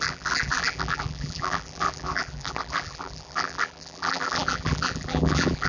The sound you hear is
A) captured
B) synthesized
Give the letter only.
B